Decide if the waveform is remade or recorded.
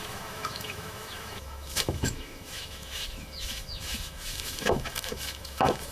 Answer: remade